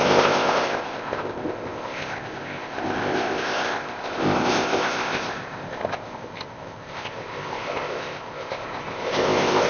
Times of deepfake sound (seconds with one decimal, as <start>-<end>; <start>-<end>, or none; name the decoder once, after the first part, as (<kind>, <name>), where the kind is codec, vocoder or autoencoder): 0.0-9.7 (codec, ZipCodec)